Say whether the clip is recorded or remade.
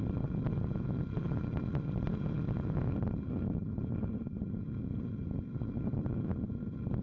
recorded